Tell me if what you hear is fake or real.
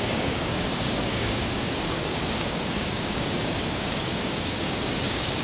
fake